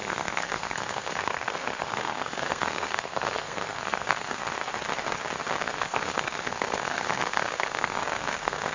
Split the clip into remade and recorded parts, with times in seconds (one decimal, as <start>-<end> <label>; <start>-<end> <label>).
0.0-4.4 remade; 4.4-5.6 recorded; 5.6-8.7 remade